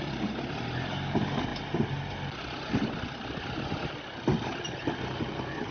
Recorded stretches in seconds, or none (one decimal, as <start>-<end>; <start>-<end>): 1.5-4.6